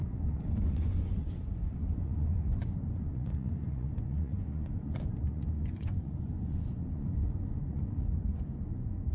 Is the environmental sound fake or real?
fake